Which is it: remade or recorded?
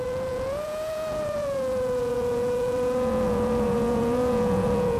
remade